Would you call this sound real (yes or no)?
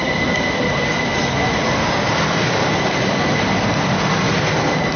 yes